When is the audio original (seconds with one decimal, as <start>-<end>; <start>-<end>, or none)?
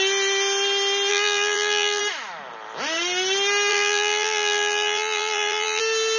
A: 0.0-1.1; 2.0-3.7; 5.8-6.2